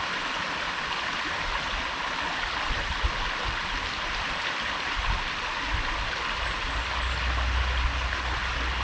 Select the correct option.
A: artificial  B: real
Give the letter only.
B